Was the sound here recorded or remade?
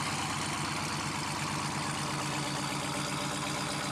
recorded